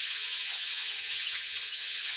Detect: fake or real fake